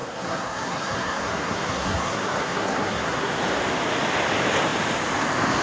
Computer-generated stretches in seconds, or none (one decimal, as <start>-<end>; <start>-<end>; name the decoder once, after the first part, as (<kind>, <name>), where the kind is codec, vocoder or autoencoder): 0.0-3.4 (codec, SNAC)